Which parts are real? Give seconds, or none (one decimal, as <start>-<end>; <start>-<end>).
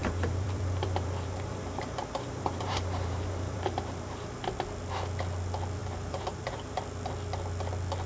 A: 4.4-5.8; 6.8-8.1